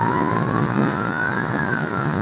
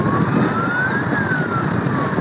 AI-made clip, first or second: first